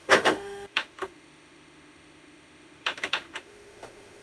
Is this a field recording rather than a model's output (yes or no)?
no